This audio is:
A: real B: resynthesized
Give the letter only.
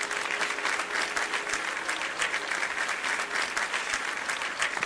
A